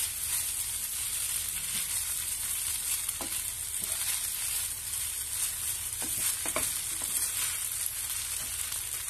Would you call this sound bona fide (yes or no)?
yes